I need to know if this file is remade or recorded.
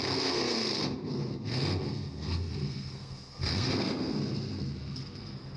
remade